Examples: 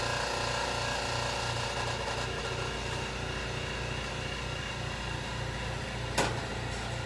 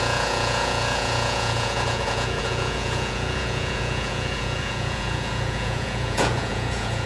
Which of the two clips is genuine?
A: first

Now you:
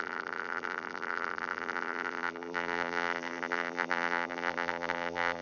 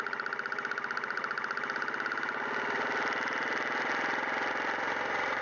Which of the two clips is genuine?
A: second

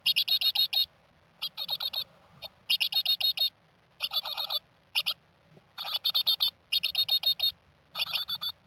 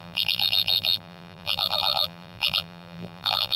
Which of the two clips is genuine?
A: first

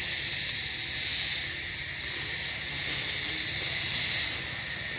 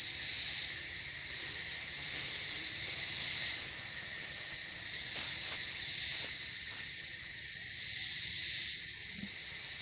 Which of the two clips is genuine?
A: first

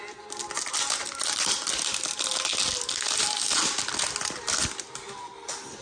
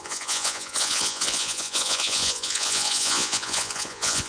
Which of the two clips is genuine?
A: first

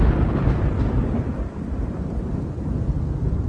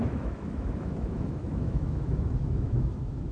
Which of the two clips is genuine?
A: first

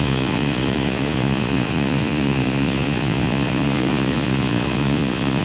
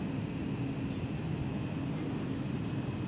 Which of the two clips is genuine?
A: second